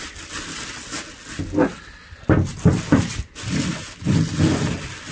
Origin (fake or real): real